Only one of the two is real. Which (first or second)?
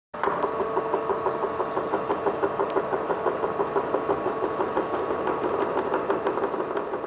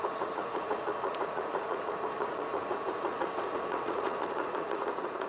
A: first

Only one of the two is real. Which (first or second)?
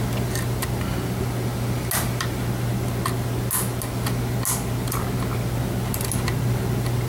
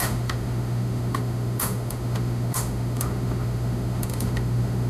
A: first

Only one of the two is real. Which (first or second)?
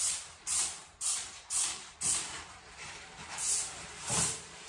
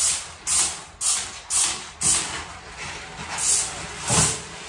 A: second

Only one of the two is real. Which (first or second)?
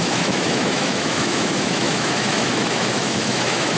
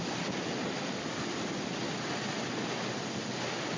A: second